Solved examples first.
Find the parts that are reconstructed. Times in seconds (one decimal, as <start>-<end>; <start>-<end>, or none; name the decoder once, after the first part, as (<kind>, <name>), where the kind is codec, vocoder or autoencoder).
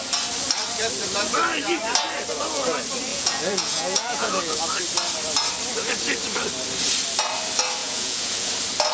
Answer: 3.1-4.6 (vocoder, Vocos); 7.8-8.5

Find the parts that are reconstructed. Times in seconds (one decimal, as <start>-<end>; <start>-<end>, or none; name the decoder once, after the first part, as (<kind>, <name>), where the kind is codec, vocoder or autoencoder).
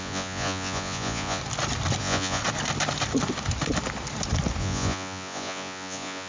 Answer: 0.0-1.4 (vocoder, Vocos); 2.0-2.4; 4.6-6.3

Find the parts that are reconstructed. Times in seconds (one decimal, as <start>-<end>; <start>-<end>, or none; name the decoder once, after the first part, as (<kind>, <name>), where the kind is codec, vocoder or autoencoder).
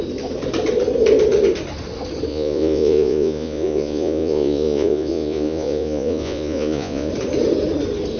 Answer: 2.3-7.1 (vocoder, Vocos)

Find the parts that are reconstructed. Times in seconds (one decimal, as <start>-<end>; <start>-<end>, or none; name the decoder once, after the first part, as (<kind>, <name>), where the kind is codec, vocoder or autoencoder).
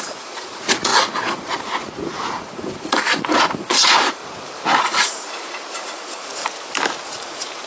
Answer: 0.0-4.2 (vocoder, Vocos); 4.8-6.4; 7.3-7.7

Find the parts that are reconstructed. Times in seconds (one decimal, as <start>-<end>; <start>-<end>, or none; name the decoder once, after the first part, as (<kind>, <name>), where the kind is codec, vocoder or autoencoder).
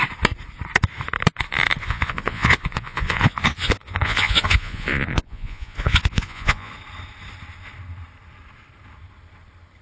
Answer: 1.8-6.7 (vocoder, Vocos)